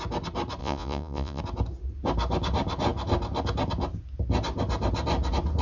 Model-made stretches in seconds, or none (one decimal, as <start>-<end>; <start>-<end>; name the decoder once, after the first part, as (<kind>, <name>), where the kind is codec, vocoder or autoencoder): 0.6-1.4 (vocoder, Vocos)